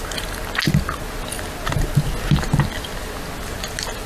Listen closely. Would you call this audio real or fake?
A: real